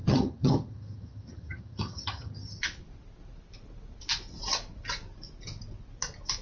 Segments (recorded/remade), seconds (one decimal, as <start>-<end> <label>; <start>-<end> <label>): 0.0-2.6 remade; 2.6-6.4 recorded